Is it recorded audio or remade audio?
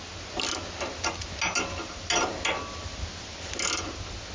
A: recorded